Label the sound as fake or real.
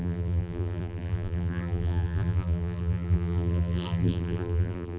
fake